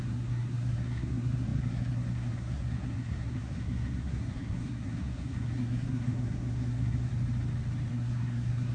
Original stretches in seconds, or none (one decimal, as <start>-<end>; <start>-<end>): 7.1-7.9